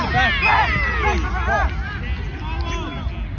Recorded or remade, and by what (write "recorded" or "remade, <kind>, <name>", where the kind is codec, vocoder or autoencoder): recorded